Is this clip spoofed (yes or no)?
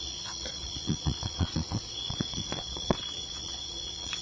yes